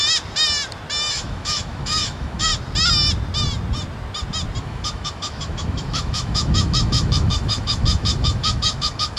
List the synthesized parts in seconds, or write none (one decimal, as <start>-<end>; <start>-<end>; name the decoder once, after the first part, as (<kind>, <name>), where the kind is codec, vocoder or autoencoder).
1.1-2.5 (autoencoder, DAC-VAE); 4.6-9.2